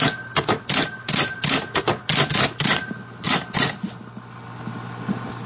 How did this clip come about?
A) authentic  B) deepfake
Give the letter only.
A